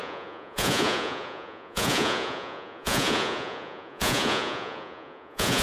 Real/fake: fake